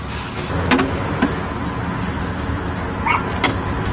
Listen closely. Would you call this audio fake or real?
real